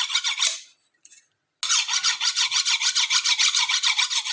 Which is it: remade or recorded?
recorded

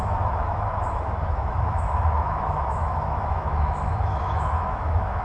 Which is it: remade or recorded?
remade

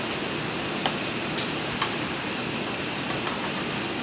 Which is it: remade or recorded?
recorded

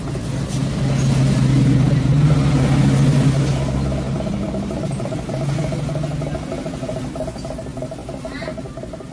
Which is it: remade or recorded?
recorded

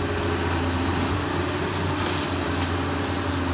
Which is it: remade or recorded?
recorded